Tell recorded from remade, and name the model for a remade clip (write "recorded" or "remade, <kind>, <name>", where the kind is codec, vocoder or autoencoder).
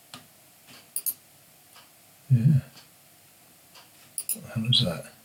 recorded